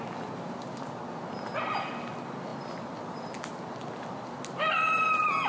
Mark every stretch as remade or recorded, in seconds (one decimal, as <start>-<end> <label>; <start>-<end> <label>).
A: 0.0-5.5 recorded

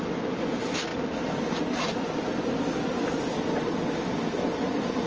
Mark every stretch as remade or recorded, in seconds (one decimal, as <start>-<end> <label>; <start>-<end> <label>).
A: 0.0-5.1 recorded

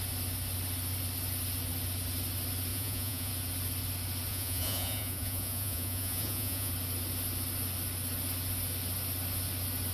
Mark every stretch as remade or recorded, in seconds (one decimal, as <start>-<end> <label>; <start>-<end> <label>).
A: 0.0-2.7 recorded; 2.7-3.3 remade; 3.3-4.3 recorded; 4.3-6.7 remade; 6.7-9.9 recorded